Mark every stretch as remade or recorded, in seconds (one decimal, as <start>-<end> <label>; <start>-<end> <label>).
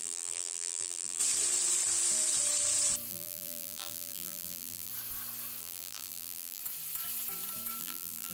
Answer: 0.0-1.2 remade; 1.2-3.1 recorded; 3.1-4.9 remade; 4.9-5.6 recorded; 5.6-6.6 remade; 6.6-7.8 recorded; 7.8-8.3 remade